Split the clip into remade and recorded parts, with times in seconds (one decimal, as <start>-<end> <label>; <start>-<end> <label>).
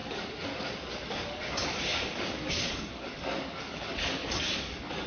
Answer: 0.0-5.1 remade